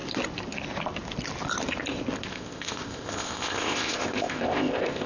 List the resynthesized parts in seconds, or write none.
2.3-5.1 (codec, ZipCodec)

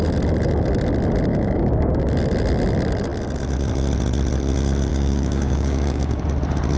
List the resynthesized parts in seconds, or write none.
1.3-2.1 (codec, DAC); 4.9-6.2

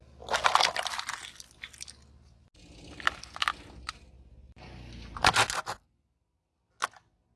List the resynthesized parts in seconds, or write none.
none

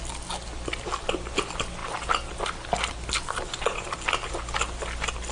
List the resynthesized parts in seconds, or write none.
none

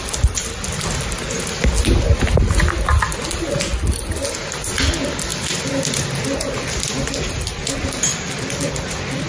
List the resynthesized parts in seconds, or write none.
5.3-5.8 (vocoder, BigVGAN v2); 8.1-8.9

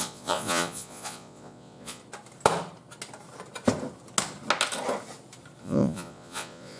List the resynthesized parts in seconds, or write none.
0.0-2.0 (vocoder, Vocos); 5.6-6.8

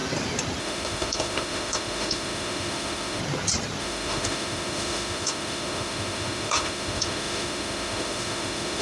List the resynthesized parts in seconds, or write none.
0.6-3.2 (autoencoder, DAC-VAE); 3.8-8.8

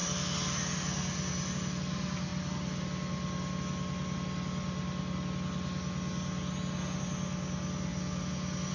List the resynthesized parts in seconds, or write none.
0.0-1.5 (vocoder, BigVGAN v2)